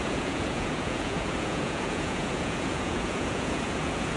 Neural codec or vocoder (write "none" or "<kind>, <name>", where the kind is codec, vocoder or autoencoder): vocoder, Vocos